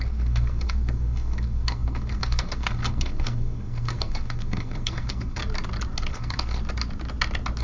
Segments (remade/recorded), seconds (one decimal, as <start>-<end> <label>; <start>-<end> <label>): 0.0-5.4 remade; 5.4-6.1 recorded; 6.1-6.6 remade; 6.6-7.6 recorded